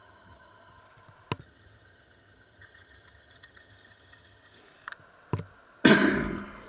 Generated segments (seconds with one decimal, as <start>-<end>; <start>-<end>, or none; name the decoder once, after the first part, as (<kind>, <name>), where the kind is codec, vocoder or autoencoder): 0.0-0.8 (vocoder, HiFi-GAN); 1.4-4.6